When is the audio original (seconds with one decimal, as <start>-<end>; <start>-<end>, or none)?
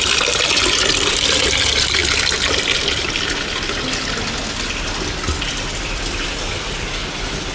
0.0-7.5